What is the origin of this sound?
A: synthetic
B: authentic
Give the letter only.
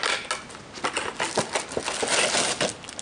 B